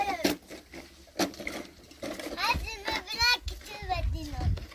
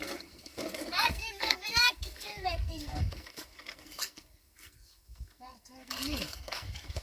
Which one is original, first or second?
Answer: first